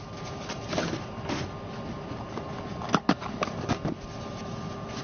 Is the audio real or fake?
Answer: real